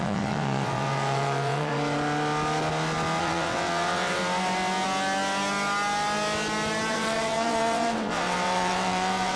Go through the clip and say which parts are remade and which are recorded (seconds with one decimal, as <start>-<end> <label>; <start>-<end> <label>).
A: 0.0-1.7 remade; 1.7-3.2 recorded; 3.2-4.2 remade; 4.2-6.9 recorded; 6.9-9.4 remade

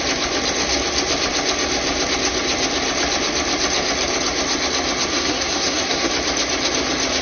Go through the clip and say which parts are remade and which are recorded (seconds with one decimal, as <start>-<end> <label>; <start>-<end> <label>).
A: 0.0-5.1 recorded; 5.1-6.1 remade; 6.1-7.2 recorded

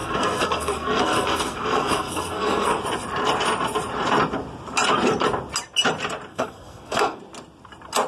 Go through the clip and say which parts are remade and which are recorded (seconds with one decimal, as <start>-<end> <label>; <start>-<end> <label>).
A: 0.0-2.8 remade; 2.8-6.3 recorded; 6.3-7.2 remade; 7.2-8.1 recorded

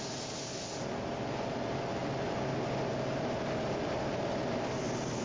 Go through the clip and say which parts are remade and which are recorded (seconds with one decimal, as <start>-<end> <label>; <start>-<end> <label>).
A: 0.0-5.2 recorded

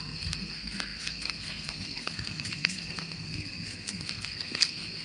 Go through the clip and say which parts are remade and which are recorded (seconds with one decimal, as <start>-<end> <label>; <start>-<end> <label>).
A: 0.0-5.0 remade